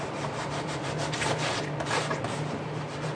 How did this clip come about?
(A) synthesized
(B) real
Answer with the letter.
A